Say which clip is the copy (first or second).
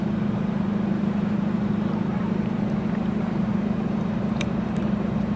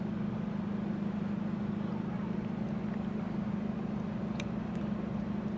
first